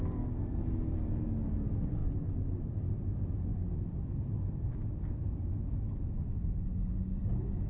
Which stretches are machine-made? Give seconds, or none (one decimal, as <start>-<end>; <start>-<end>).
none